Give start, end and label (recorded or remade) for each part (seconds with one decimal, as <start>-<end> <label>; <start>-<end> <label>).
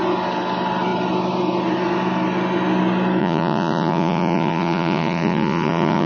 0.0-3.2 recorded; 3.2-6.1 remade